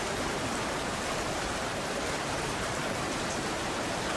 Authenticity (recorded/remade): remade